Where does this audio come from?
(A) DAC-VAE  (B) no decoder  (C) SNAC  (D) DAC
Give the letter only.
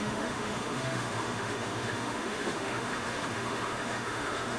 A